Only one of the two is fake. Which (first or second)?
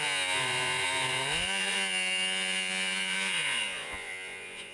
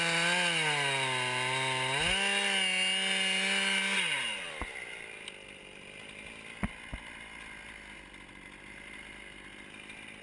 first